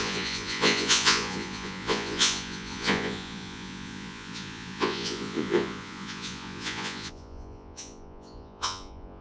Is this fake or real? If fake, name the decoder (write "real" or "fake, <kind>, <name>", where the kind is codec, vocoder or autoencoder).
fake, vocoder, Vocos